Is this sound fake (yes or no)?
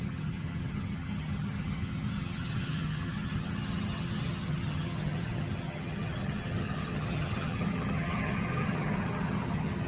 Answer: yes